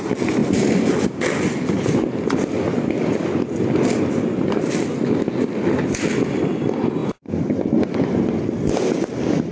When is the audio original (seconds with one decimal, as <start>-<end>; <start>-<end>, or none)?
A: 0.0-9.5